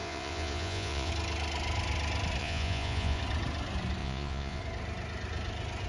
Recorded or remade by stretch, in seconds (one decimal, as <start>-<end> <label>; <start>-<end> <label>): 0.0-1.1 remade; 1.1-2.4 recorded; 2.4-3.2 remade; 3.2-4.0 recorded; 4.0-4.6 remade; 4.6-5.9 recorded